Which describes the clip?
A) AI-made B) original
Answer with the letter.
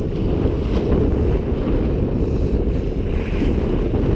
B